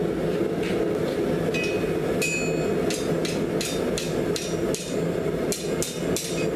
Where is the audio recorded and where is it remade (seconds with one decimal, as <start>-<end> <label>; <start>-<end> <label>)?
0.0-6.6 recorded